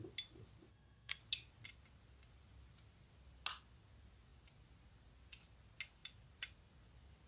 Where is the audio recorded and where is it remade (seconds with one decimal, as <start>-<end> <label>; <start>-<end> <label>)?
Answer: 0.0-0.7 recorded; 0.7-1.2 remade; 1.2-7.3 recorded